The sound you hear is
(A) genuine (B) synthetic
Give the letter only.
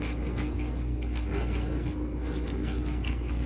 B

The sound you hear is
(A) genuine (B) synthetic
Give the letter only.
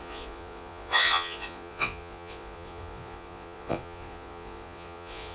B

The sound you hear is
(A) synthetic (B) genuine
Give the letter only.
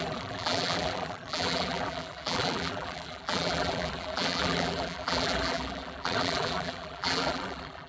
A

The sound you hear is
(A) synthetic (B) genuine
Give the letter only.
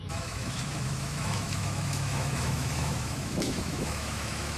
A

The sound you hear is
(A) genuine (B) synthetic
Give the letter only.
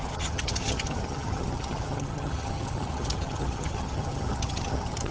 B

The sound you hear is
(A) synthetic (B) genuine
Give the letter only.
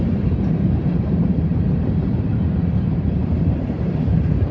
A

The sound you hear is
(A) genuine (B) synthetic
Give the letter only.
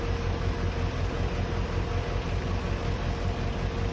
A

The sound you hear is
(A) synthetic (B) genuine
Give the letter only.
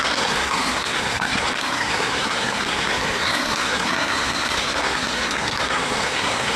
A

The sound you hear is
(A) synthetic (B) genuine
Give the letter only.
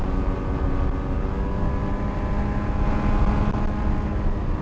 B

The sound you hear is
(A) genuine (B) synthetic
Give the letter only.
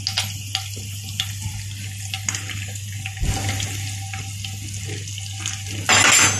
A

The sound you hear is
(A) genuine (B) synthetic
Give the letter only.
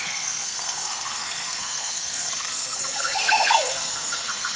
B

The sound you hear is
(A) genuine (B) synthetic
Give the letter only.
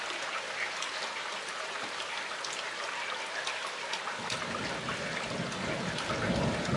A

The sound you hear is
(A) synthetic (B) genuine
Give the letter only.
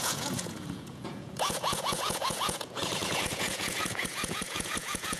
A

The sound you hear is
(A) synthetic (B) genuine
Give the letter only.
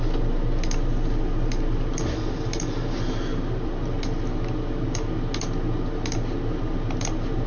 B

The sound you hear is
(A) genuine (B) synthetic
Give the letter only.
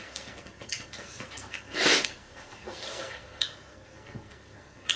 B